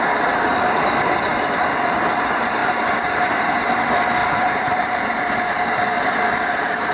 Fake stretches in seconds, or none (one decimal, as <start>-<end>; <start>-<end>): 4.2-5.0